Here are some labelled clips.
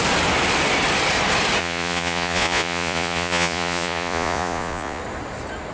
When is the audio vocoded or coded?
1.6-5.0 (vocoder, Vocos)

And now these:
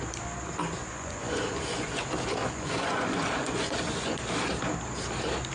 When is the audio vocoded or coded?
0.8-2.0 (vocoder, Vocos); 2.4-4.2

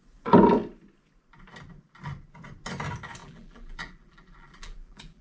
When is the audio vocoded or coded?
3.2-5.2 (vocoder, BigVGAN v2)

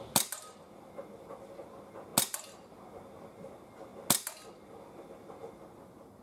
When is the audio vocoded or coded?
none